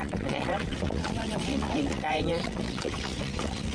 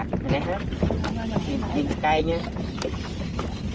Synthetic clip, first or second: first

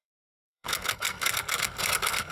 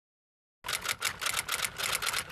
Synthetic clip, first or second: first